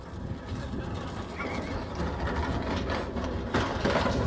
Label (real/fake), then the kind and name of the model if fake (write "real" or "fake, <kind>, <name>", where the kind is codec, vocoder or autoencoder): real